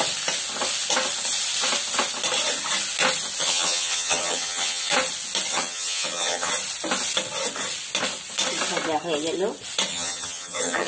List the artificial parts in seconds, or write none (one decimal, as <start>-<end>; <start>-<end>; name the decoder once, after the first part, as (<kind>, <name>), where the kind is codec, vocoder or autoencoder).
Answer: 3.4-4.9 (vocoder, HiFi-GAN); 5.5-6.5; 9.9-10.9